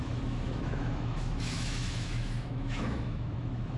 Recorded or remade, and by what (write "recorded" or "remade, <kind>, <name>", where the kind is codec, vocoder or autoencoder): remade, autoencoder, DAC-VAE